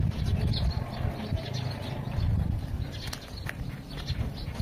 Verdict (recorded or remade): recorded